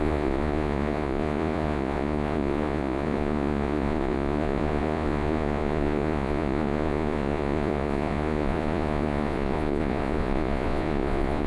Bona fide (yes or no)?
no